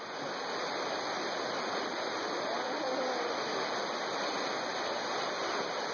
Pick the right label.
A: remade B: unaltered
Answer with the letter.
B